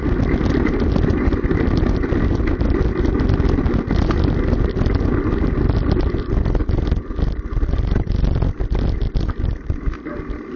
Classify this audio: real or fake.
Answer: real